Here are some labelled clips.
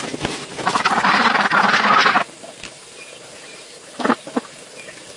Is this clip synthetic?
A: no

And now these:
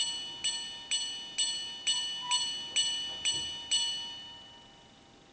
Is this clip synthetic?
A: no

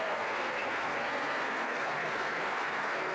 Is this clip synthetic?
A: yes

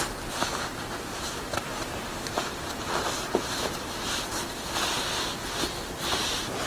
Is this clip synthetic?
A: no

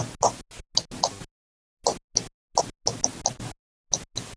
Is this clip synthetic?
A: no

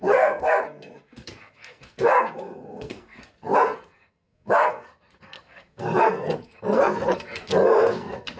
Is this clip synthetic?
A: yes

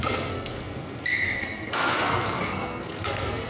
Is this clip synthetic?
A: yes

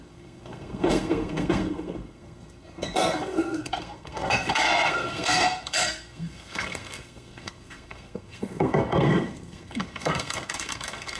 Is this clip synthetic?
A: yes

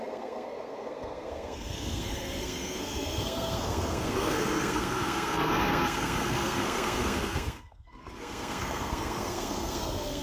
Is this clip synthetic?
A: yes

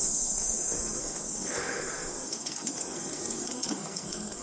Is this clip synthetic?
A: yes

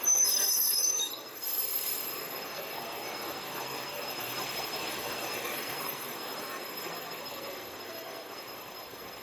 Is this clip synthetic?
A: yes